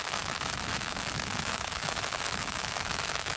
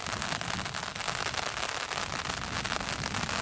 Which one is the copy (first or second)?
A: first